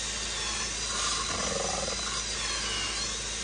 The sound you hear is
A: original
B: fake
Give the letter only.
A